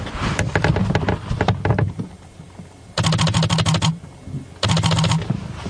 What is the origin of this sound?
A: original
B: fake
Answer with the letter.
A